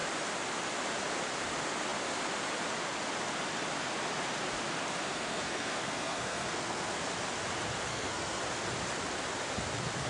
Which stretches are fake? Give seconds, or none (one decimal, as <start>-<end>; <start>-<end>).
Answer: 5.0-7.0; 7.9-8.4